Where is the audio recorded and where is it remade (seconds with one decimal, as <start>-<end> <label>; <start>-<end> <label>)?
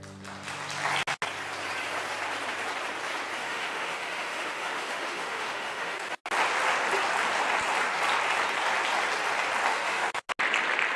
0.0-3.4 recorded; 3.4-6.1 remade; 6.1-9.7 recorded; 9.7-10.2 remade; 10.2-11.0 recorded